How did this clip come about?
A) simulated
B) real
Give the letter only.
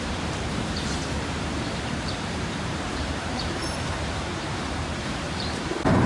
A